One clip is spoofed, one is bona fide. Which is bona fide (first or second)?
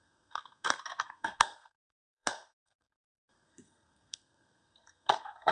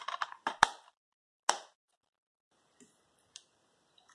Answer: second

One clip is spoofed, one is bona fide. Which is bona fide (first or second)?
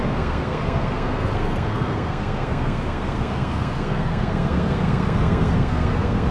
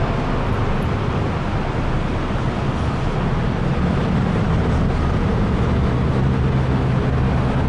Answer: second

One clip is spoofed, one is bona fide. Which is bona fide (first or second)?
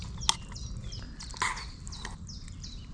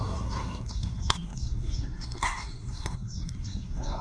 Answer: first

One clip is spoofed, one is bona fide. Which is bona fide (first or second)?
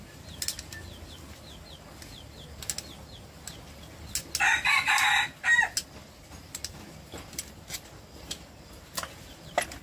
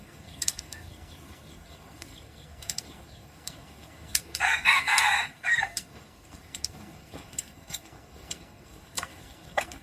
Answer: first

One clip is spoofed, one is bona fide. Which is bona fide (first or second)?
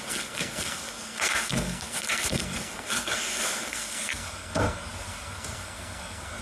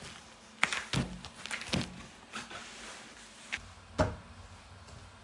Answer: second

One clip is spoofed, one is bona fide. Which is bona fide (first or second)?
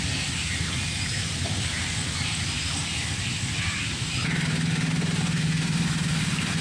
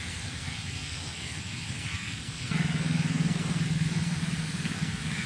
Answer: first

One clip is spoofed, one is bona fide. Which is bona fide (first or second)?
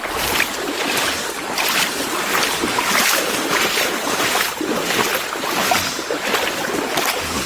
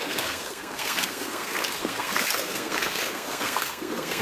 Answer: first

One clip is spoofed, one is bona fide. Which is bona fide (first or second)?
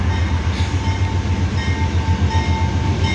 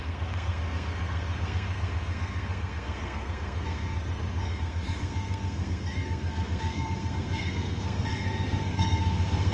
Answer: first